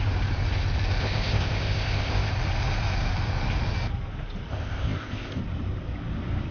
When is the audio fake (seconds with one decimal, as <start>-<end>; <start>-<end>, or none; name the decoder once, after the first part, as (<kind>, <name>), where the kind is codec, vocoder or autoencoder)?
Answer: 1.0-2.3 (codec, ZipCodec); 4.5-5.4